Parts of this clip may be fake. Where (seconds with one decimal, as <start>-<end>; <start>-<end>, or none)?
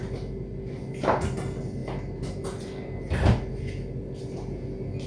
none